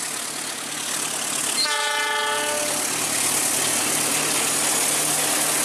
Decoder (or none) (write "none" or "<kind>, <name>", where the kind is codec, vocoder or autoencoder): none